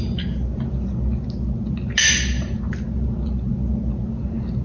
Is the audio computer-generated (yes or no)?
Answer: no